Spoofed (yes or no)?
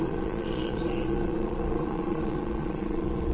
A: yes